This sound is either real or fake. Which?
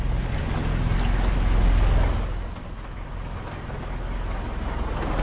real